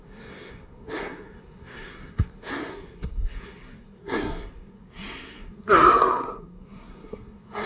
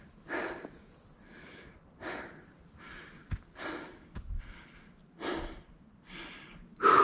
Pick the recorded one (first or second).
second